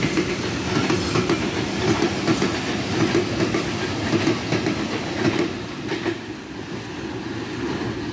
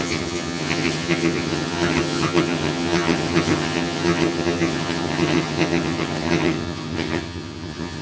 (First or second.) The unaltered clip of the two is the first